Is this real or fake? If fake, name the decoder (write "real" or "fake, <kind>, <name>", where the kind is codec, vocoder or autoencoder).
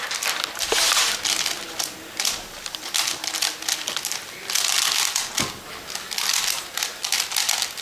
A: real